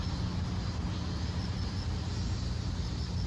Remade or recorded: recorded